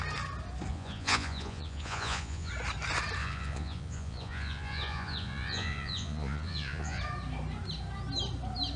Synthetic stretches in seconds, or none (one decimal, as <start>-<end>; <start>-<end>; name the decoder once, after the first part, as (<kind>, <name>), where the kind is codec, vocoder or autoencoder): 0.7-2.5 (vocoder, Vocos); 3.2-7.0